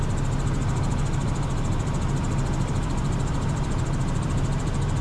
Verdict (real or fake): fake